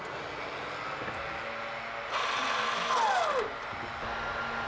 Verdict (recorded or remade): recorded